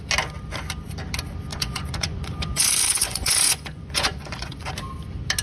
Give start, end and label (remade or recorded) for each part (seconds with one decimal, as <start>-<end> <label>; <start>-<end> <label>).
0.0-1.5 recorded; 1.5-4.7 remade; 4.7-5.4 recorded